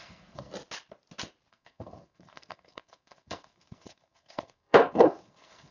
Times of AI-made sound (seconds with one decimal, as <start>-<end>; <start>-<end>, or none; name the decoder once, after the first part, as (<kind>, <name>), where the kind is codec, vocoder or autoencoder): 0.0-0.5 (codec, SNAC); 1.5-5.7